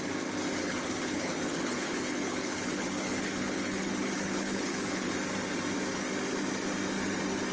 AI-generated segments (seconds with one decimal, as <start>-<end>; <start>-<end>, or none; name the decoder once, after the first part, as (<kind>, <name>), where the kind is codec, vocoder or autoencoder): 0.6-5.1 (codec, HILCodec)